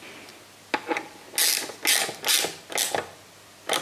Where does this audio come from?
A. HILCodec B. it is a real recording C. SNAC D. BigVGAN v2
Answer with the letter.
B